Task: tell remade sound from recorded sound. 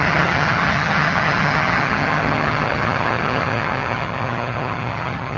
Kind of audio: remade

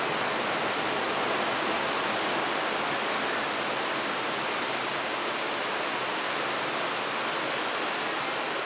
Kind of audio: recorded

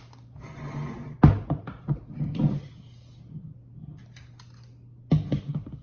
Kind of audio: recorded